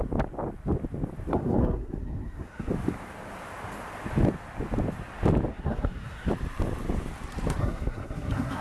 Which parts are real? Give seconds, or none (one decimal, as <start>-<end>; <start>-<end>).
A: 0.0-1.3; 2.7-5.5; 6.3-7.6